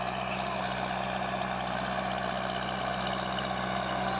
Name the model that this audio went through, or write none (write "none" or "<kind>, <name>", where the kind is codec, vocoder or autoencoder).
none